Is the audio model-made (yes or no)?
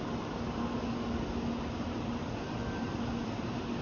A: no